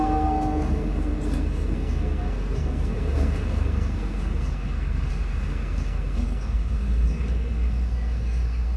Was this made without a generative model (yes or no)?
no